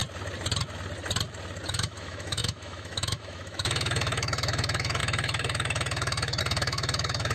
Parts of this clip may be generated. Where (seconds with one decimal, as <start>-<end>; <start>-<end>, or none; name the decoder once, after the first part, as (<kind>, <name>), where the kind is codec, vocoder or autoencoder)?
1.7-7.3 (autoencoder, DAC-VAE)